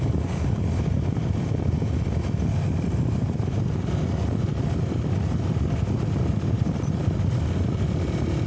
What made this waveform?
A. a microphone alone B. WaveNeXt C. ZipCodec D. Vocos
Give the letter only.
A